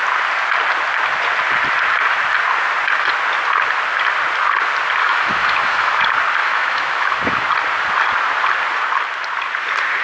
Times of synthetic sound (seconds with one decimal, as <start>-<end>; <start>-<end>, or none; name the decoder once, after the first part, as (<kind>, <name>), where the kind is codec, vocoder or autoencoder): 5.0-6.0 (autoencoder, DAC-VAE); 6.4-7.5